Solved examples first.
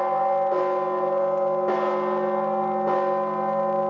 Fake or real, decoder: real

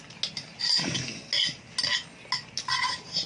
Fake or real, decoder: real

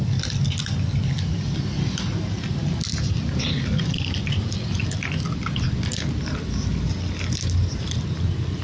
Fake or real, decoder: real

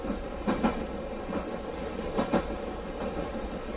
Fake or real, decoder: real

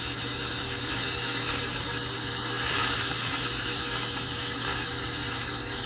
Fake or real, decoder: fake, autoencoder, DAC-VAE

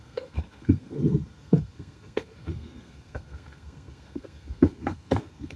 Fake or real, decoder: fake, codec, SNAC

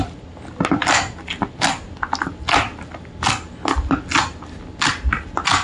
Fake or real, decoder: real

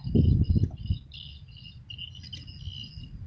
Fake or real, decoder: real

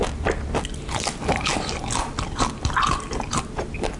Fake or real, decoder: real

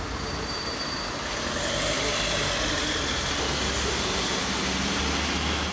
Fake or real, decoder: real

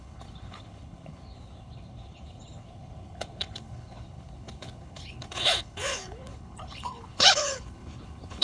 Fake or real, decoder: fake, codec, HILCodec